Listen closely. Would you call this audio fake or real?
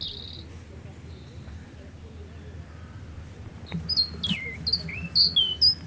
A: real